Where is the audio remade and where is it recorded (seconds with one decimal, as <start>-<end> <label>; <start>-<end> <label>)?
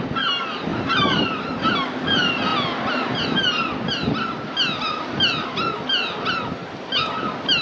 0.0-0.7 recorded; 0.7-1.4 remade; 1.4-7.6 recorded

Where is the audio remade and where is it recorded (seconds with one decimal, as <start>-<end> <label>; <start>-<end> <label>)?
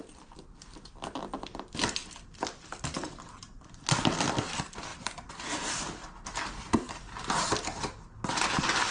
0.0-0.5 remade; 0.5-2.0 recorded; 2.0-2.6 remade; 2.6-8.9 recorded